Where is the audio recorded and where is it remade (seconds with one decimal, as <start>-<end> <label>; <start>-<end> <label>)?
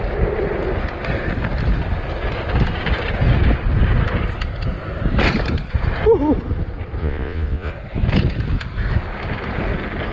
0.0-7.0 recorded; 7.0-7.7 remade; 7.7-10.1 recorded